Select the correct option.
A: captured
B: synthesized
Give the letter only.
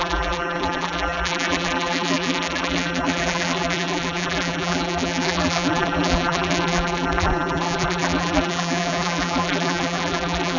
B